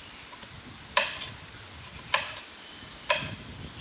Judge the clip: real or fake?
real